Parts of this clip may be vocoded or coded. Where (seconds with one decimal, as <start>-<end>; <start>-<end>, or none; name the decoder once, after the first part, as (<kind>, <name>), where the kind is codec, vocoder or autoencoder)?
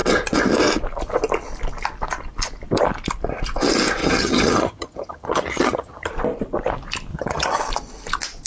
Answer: 4.0-6.1 (vocoder, HiFi-GAN); 7.1-7.6